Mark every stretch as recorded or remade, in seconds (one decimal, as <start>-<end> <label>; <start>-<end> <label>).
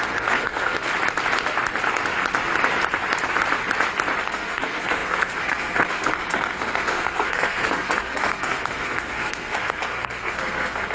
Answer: 0.0-0.9 remade; 0.9-4.2 recorded; 4.2-10.9 remade